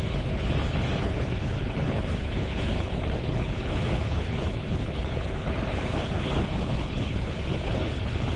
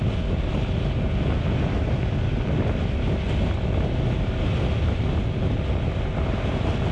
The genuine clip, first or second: second